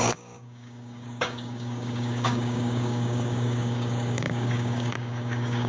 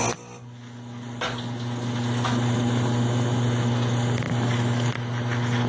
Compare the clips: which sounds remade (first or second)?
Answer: first